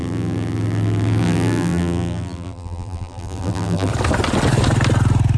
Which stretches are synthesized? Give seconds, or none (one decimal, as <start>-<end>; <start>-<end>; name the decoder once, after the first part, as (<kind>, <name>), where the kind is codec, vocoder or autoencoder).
0.0-3.9 (vocoder, BigVGAN v2)